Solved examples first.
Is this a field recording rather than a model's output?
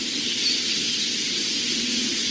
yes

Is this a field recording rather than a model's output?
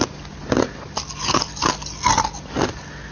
yes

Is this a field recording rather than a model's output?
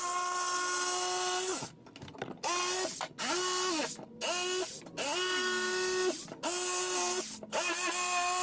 yes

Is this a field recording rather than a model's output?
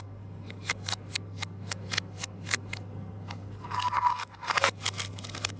no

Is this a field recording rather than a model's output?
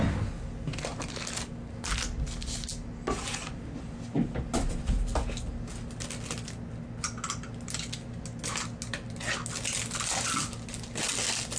yes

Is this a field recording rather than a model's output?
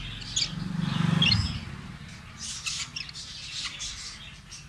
yes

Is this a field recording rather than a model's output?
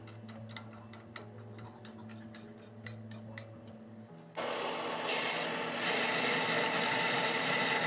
yes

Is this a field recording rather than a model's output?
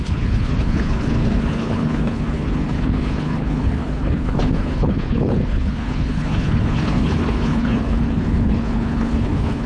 no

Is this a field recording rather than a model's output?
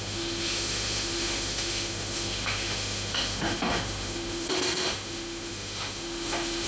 no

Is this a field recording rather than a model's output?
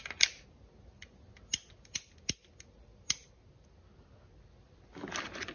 yes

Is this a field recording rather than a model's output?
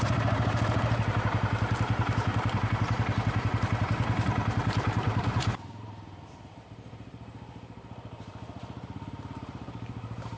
no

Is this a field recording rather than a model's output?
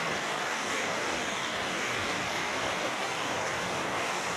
no